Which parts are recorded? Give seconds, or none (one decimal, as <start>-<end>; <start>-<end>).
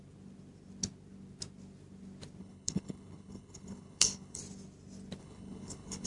0.0-2.4; 4.4-5.2